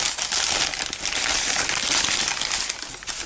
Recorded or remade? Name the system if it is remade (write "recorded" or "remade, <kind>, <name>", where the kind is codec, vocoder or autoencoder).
recorded